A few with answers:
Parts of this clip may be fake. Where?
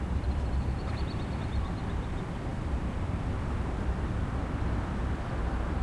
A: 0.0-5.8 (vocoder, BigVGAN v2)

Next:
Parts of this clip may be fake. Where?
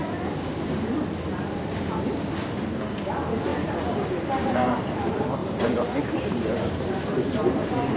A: 3.5-4.8 (vocoder, BigVGAN v2); 5.4-8.0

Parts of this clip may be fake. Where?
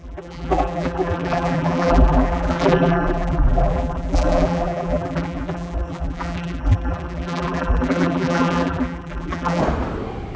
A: 0.0-9.6 (vocoder, BigVGAN v2)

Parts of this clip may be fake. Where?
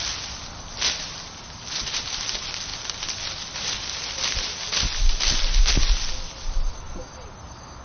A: none